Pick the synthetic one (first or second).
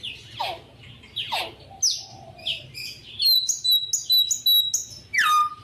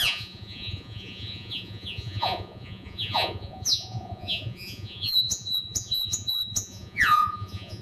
second